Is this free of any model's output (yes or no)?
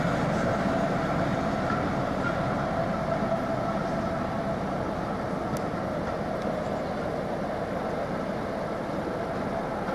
yes